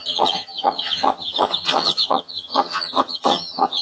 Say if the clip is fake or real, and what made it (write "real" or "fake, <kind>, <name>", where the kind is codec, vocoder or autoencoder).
fake, vocoder, HiFi-GAN